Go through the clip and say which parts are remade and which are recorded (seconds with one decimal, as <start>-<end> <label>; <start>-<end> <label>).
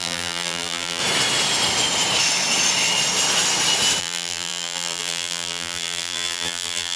0.0-1.0 remade; 1.0-4.0 recorded; 4.0-7.0 remade